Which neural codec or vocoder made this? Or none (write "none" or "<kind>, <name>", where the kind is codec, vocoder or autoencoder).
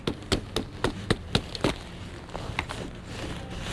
none